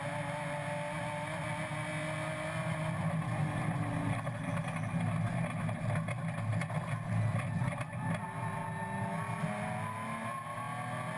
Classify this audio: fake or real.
real